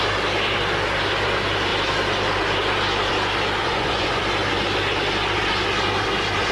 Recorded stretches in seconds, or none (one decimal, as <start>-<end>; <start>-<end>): 0.0-3.6; 4.2-6.5